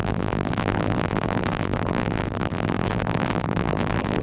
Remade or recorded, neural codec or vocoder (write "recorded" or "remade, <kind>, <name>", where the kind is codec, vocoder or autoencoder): remade, vocoder, BigVGAN v2